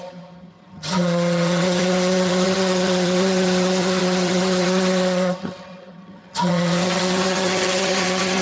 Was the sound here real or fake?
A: fake